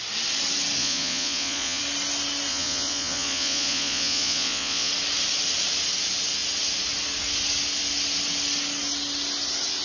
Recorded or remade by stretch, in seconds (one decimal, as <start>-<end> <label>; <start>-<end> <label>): 0.0-0.8 recorded; 0.8-1.8 remade; 1.8-2.5 recorded; 2.5-4.9 remade; 4.9-9.8 recorded